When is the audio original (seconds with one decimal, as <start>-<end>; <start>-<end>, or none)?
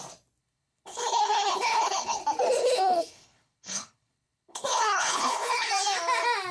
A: 0.0-0.4; 2.2-2.6; 5.7-6.5